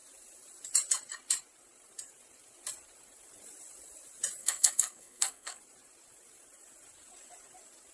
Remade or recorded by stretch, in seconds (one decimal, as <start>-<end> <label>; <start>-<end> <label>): 0.0-4.4 recorded; 4.4-5.6 remade; 5.6-7.9 recorded